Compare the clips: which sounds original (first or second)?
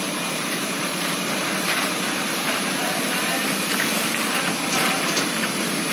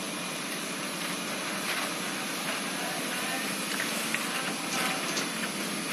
second